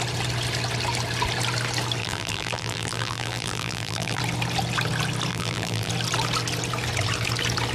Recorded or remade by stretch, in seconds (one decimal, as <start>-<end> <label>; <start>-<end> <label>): 0.0-2.0 recorded; 2.0-4.2 remade; 4.2-5.3 recorded; 5.3-5.9 remade; 5.9-7.7 recorded